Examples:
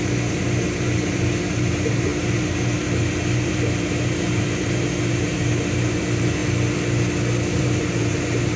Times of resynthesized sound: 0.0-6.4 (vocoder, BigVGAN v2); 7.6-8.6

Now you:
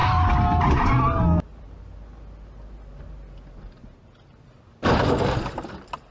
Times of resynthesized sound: none

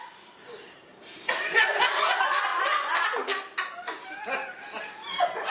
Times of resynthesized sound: none

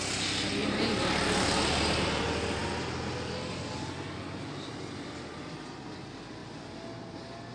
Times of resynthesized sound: 0.6-2.2 (vocoder, BigVGAN v2)